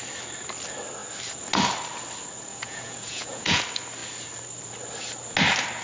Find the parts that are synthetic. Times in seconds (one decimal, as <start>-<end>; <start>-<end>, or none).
2.5-3.6